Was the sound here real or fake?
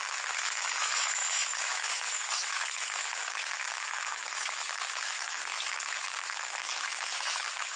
fake